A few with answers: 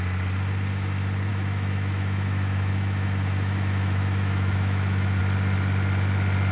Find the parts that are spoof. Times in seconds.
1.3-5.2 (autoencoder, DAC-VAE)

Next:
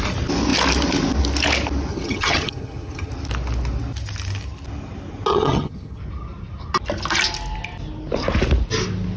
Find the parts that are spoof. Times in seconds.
1.9-3.1 (vocoder, HiFi-GAN); 5.3-6.0